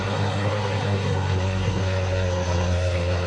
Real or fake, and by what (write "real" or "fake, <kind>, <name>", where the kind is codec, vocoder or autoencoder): fake, codec, SNAC